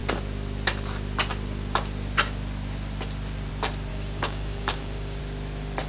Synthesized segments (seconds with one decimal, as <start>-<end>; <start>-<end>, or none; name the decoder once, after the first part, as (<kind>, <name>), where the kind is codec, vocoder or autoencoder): 3.9-5.2 (codec, DAC)